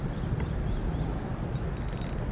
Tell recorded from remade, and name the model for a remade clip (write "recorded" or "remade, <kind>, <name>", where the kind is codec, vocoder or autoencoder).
remade, vocoder, BigVGAN v2